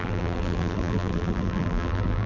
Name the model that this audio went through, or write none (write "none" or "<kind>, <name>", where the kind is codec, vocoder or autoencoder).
vocoder, BigVGAN v2